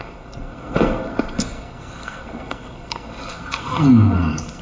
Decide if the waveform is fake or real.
fake